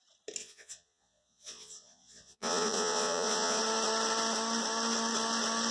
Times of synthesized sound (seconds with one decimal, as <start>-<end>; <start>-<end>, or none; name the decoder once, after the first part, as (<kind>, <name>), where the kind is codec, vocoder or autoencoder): 0.4-3.6 (vocoder, Vocos)